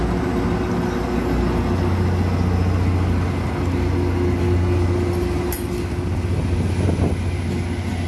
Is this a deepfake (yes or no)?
no